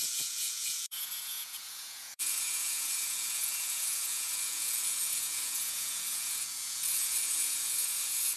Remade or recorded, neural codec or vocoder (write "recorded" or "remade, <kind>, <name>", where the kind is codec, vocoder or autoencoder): remade, vocoder, Vocos